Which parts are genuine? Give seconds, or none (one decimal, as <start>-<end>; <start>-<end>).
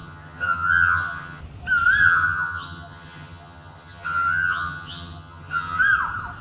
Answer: 1.4-2.0; 5.8-6.4